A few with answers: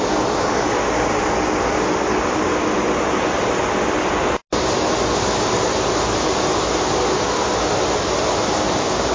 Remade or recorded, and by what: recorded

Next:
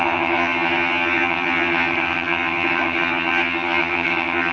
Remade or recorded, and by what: remade, vocoder, HiFi-GAN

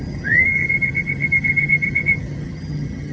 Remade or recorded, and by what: remade, vocoder, HiFi-GAN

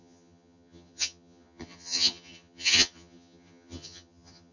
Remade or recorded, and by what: remade, vocoder, HiFi-GAN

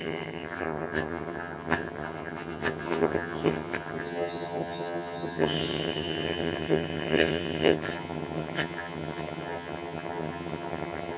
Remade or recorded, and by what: remade, vocoder, HiFi-GAN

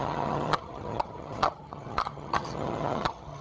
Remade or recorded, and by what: remade, vocoder, HiFi-GAN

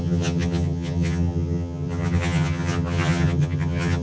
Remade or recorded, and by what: remade, vocoder, HiFi-GAN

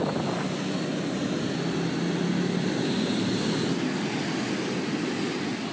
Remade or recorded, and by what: recorded